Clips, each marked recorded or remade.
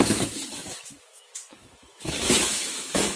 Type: remade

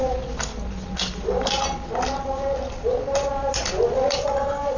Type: recorded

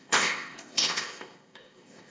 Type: remade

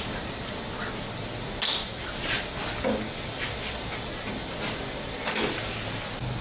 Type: recorded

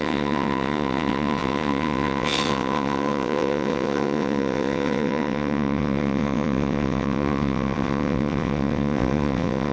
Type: remade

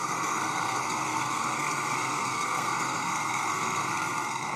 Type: remade